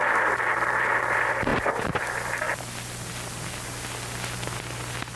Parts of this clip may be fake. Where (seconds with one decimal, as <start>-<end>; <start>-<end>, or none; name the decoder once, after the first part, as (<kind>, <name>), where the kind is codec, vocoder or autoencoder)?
none